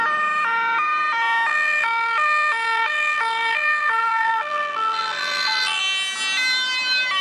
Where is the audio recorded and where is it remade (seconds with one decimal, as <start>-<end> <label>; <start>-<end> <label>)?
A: 0.0-1.5 recorded; 1.5-5.8 remade; 5.8-7.2 recorded